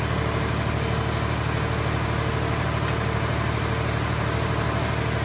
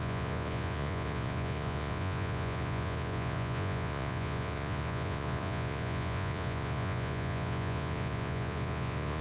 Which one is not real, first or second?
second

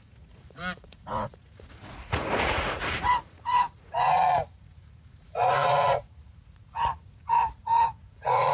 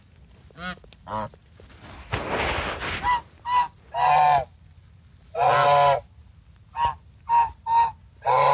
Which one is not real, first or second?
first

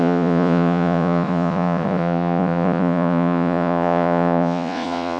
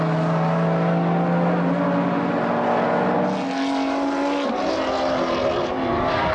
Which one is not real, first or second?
first